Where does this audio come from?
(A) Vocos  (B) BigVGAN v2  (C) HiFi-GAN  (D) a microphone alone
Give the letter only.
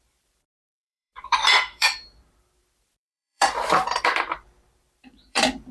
B